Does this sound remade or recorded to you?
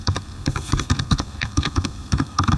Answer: remade